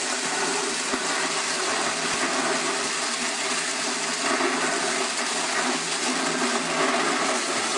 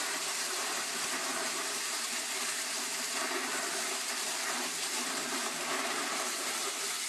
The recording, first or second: first